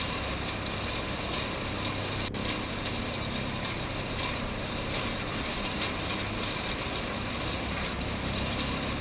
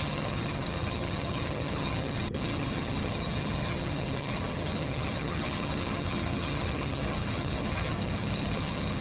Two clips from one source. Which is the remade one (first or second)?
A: second